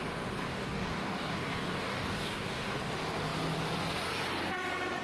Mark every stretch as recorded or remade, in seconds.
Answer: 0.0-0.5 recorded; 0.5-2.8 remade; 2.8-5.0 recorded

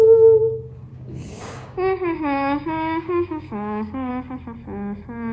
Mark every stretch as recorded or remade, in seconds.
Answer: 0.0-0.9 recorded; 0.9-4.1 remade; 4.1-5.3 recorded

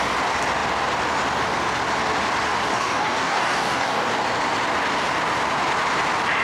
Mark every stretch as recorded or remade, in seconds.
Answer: 0.0-2.7 recorded; 2.7-4.1 remade; 4.1-6.4 recorded

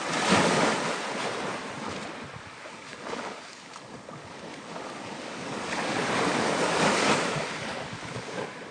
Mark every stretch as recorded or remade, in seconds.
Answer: 0.0-0.7 remade; 0.7-2.4 recorded; 2.4-8.7 remade

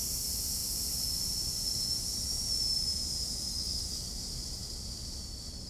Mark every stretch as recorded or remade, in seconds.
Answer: 0.0-3.5 recorded; 3.5-4.1 remade; 4.1-5.7 recorded